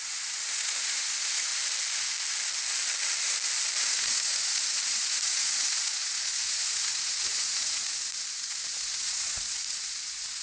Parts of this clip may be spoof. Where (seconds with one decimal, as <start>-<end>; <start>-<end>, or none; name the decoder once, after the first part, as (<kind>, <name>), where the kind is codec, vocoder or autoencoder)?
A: 0.0-1.5 (vocoder, Vocos); 3.8-10.4